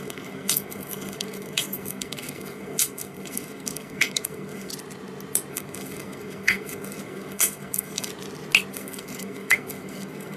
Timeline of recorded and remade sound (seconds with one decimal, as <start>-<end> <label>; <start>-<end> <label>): 0.0-4.7 remade; 4.7-5.5 recorded; 5.5-8.1 remade; 8.1-8.7 recorded; 8.7-10.4 remade